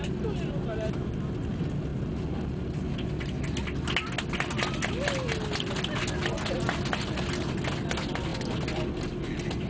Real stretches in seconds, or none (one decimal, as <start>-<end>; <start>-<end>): 0.0-9.7